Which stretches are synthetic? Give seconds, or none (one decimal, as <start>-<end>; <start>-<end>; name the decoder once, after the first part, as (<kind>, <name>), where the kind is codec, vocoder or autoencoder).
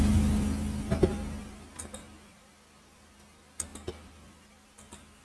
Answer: none